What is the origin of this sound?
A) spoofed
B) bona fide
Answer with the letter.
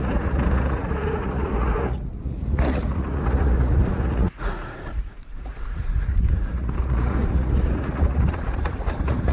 A